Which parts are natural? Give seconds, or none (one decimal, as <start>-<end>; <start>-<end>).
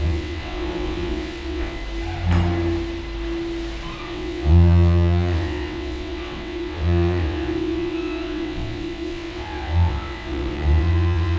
1.8-4.0